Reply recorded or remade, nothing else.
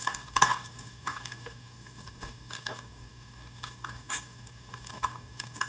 remade